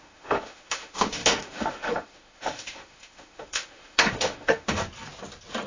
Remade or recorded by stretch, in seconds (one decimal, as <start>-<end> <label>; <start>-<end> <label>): 0.0-4.8 remade; 4.8-5.7 recorded